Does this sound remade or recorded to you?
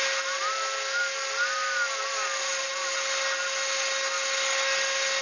recorded